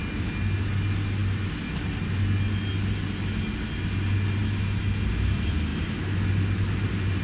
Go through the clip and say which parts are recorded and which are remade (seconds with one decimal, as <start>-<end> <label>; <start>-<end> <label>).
0.0-7.2 recorded